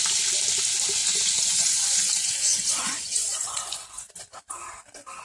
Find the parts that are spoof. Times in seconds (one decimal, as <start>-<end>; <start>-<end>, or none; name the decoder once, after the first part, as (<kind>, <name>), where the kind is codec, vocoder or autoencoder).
1.0-4.1 (vocoder, Vocos)